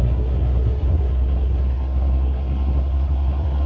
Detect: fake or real fake